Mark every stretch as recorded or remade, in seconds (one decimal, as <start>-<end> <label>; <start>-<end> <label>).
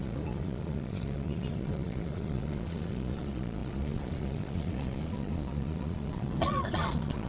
0.0-7.3 remade